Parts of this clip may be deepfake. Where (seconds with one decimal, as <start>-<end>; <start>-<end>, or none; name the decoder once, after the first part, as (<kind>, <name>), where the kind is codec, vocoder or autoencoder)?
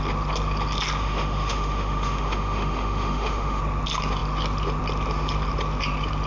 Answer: 1.0-3.6 (autoencoder, DAC-VAE)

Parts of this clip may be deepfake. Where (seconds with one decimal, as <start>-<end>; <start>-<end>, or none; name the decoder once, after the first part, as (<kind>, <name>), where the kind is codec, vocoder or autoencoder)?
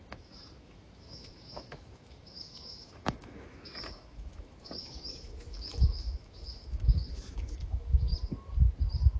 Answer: 0.0-8.1 (autoencoder, DAC-VAE)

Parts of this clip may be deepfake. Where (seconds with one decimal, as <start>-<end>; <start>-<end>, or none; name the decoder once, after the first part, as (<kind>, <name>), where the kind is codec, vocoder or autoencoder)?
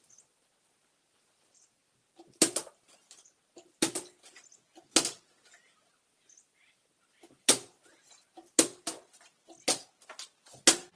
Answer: none